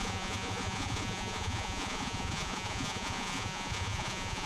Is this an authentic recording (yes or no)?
no